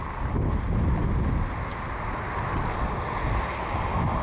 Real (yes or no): yes